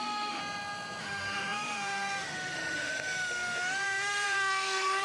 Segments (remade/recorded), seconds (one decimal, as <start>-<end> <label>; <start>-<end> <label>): 0.0-0.4 remade; 0.4-1.0 recorded; 1.0-5.0 remade